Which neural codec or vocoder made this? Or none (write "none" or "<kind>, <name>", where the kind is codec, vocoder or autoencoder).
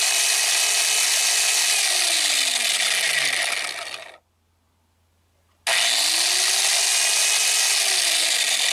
none